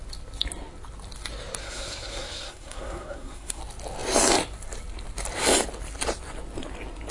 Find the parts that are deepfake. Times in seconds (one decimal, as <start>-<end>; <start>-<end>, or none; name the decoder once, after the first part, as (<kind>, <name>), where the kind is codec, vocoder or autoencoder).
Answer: 1.6-3.6 (codec, SNAC)